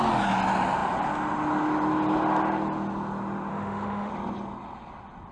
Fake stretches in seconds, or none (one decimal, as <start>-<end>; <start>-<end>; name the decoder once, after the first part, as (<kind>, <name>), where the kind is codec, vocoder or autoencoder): 3.5-4.1 (autoencoder, DAC-VAE)